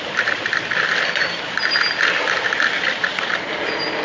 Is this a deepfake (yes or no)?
no